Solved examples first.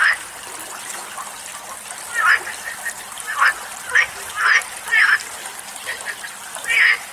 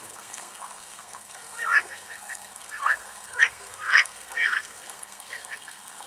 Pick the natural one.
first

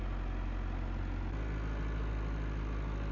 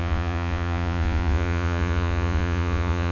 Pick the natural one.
first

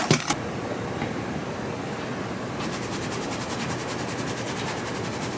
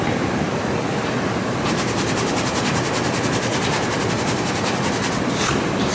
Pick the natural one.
first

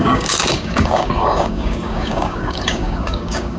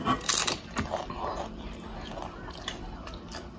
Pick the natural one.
second